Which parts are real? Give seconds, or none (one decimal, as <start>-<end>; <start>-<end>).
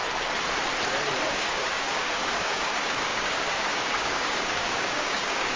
0.0-1.3